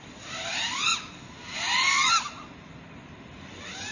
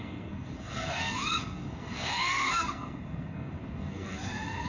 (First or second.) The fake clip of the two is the second